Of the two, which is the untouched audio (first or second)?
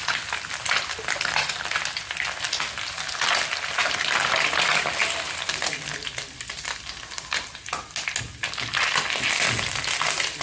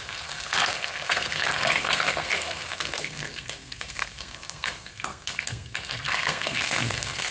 first